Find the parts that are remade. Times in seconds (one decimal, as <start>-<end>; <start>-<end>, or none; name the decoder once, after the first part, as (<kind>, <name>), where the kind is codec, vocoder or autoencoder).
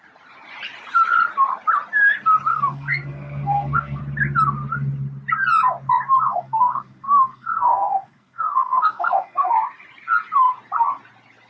2.5-4.0 (codec, SNAC); 6.3-9.5